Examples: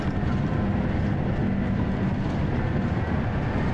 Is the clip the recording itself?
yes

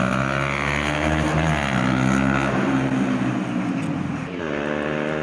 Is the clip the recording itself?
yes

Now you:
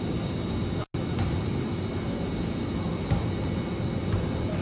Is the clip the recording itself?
yes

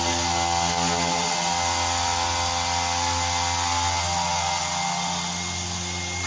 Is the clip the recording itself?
yes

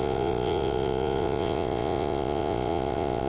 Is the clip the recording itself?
no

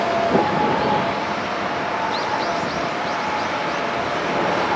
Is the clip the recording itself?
yes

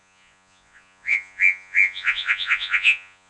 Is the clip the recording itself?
no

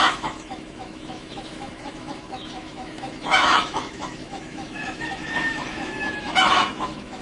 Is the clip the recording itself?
no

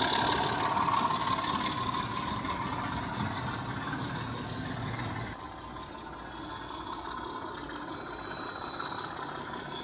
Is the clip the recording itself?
yes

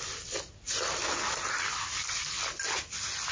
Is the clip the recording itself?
yes